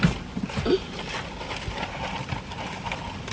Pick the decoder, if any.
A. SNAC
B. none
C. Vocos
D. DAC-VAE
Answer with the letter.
B